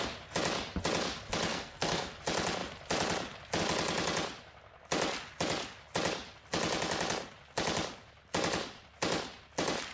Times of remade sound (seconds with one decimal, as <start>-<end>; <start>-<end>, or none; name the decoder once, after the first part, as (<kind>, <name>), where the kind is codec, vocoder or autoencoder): 1.5-2.1 (codec, SNAC)